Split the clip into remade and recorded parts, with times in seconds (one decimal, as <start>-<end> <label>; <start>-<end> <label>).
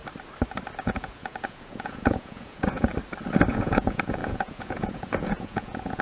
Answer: 0.0-0.8 recorded; 0.8-2.9 remade; 2.9-3.5 recorded; 3.5-6.0 remade